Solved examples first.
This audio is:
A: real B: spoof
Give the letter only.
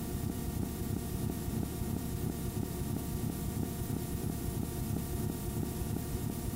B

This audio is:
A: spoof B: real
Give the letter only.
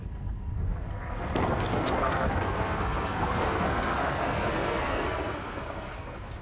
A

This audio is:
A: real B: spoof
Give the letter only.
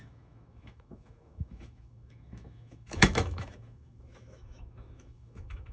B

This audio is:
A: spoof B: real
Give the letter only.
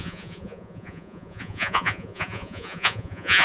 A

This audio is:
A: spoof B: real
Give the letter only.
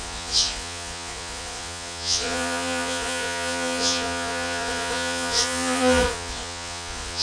A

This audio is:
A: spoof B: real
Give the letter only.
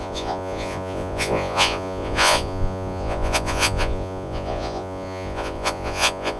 A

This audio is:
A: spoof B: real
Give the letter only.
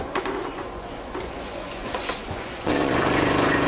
A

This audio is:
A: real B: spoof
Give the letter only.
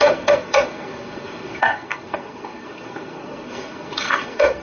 B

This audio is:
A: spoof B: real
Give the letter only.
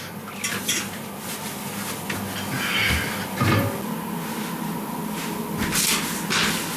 B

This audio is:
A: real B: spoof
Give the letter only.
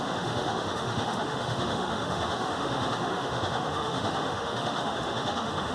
B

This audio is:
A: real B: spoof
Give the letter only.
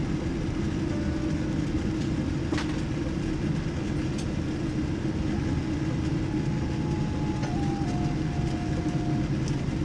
A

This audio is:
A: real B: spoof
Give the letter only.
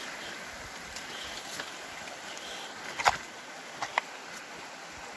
A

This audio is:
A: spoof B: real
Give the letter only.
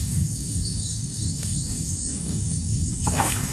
A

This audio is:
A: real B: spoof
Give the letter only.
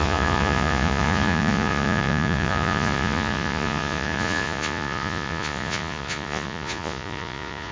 B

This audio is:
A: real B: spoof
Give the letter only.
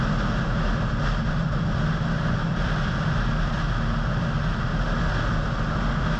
A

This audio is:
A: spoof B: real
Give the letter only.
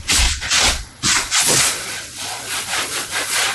A